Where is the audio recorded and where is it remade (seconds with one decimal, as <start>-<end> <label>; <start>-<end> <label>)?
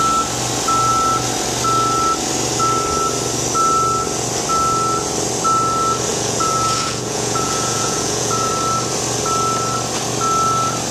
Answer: 0.0-6.1 recorded; 6.1-8.5 remade; 8.5-10.9 recorded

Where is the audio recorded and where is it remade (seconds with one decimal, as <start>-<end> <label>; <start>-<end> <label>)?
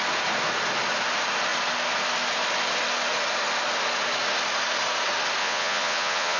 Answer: 0.0-5.4 recorded; 5.4-6.4 remade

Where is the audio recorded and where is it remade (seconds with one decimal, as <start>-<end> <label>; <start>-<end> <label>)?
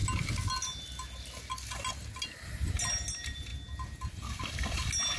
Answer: 0.0-5.2 recorded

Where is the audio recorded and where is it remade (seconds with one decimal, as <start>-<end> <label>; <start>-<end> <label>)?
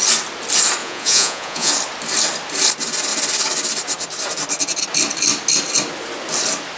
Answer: 0.0-0.8 recorded; 0.8-1.7 remade; 1.7-6.8 recorded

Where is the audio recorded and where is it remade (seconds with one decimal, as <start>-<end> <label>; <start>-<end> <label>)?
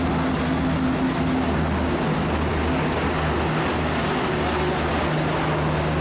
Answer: 0.0-6.0 recorded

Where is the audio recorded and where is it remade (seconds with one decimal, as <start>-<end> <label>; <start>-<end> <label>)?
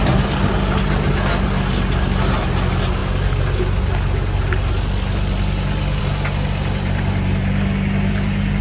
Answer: 0.0-8.6 recorded